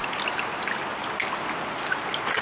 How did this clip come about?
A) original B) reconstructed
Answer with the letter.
A